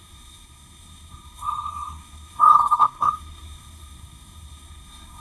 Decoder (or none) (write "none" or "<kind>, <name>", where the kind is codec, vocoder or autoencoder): codec, SNAC